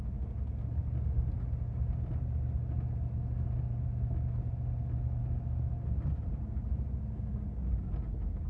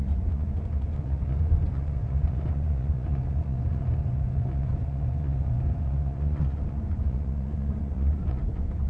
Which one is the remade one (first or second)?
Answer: second